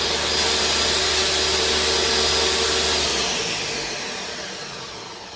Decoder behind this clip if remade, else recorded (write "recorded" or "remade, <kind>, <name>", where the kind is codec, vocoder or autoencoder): recorded